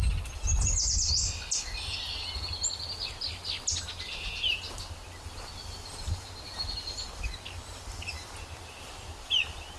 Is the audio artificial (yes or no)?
no